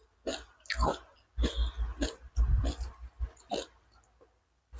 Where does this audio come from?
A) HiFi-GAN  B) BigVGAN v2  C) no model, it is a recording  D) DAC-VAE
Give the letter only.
C